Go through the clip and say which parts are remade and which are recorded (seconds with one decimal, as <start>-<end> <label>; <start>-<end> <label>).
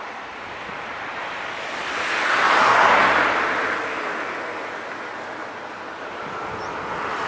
0.0-0.7 recorded; 0.7-1.2 remade; 1.2-5.4 recorded; 5.4-6.7 remade; 6.7-7.3 recorded